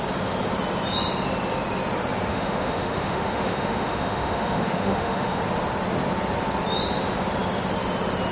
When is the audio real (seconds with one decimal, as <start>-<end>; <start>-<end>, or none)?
0.0-2.3; 5.4-8.3